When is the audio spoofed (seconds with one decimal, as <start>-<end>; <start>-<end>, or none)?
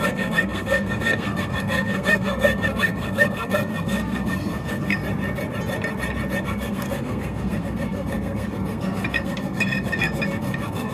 0.0-5.0; 6.4-10.9